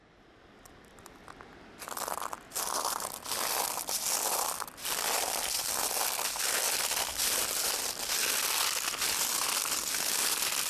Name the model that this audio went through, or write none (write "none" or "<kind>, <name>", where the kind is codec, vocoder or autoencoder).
none